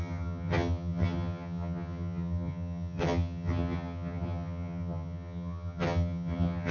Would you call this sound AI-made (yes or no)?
yes